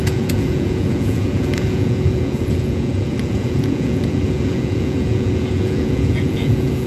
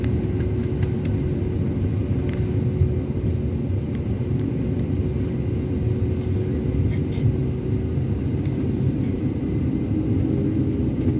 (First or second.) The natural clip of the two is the second